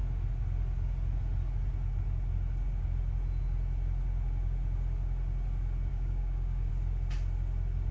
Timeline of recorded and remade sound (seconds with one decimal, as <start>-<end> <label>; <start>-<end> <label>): 0.0-5.9 recorded; 5.9-6.7 remade; 6.7-7.9 recorded